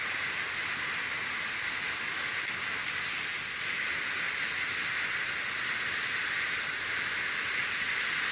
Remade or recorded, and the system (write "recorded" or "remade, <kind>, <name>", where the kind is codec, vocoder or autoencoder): recorded